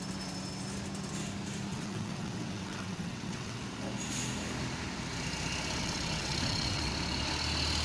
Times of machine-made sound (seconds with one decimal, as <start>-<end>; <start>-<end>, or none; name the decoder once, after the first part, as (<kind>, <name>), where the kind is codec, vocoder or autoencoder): 1.7-3.6 (vocoder, WaveNeXt); 5.8-6.9